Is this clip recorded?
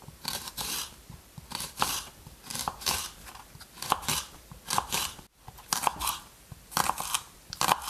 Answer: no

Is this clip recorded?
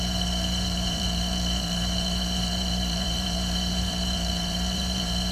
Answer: no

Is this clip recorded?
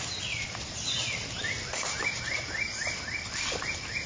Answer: no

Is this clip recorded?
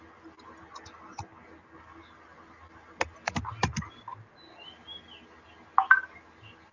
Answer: yes